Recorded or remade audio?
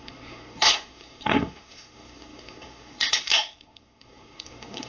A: remade